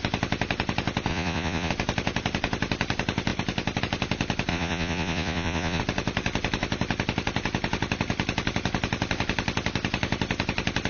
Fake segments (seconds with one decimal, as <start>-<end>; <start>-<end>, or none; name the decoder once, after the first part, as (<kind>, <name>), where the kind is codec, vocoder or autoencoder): 1.1-1.7 (vocoder, Vocos); 4.5-5.8